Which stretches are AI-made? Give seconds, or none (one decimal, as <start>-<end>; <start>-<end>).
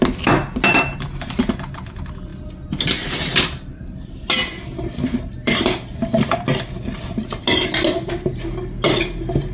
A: none